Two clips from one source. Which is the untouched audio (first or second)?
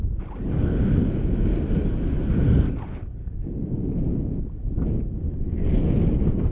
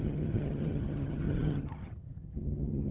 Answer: first